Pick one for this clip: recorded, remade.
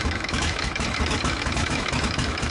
remade